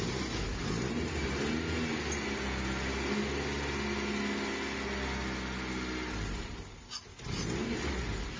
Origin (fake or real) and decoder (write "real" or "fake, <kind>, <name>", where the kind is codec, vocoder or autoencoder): real